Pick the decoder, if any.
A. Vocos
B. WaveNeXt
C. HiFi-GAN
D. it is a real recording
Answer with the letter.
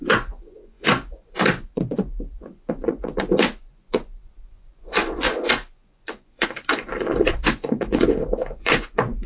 A